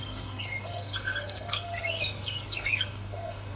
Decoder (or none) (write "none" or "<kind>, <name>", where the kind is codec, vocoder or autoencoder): codec, SNAC